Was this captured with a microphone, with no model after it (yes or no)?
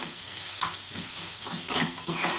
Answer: no